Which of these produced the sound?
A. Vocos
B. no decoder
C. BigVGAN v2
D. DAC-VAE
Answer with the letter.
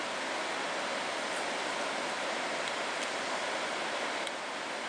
B